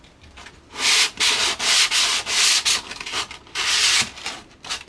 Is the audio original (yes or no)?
no